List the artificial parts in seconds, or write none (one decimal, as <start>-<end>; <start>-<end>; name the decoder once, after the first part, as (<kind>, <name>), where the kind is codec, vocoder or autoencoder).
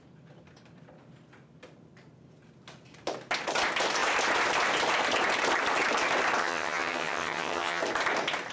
6.4-7.8 (vocoder, HiFi-GAN)